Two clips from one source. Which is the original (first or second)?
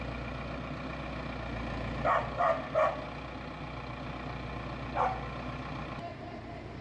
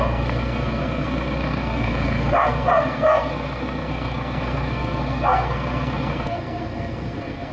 first